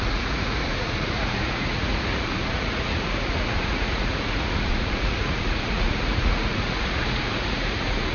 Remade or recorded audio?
remade